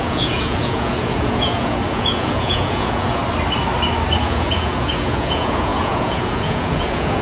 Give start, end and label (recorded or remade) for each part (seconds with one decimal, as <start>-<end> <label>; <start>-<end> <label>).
0.0-3.2 remade; 3.2-4.2 recorded; 4.2-7.2 remade